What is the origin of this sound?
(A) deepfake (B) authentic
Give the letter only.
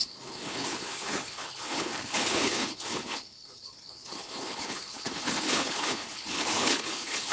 A